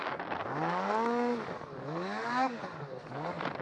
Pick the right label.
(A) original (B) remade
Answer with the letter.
B